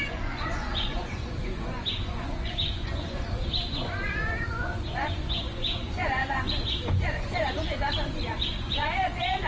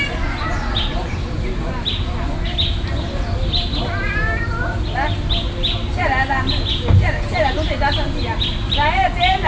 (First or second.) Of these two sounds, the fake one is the first